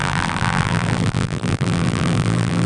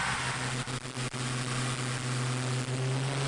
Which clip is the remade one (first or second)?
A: first